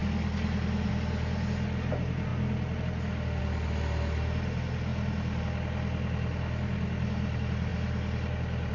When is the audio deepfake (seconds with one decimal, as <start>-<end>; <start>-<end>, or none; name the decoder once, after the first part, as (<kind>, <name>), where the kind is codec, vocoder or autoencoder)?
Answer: none